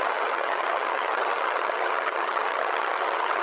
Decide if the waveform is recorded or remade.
remade